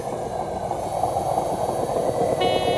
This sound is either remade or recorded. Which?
recorded